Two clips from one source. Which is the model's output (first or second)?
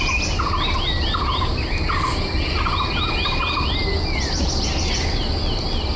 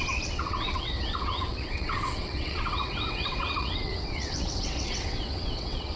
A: second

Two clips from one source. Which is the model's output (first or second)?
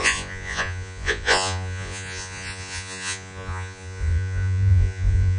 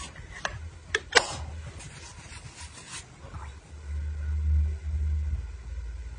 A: first